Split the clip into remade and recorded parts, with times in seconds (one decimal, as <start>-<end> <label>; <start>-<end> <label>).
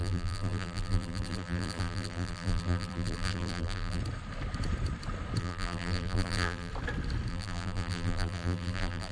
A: 0.0-4.0 remade; 4.0-5.4 recorded; 5.4-6.7 remade; 6.7-7.3 recorded; 7.3-9.1 remade